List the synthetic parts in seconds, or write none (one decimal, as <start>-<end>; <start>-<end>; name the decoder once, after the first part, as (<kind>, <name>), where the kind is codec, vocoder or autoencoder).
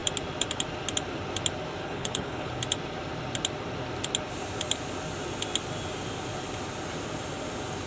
1.8-2.6 (codec, HILCodec)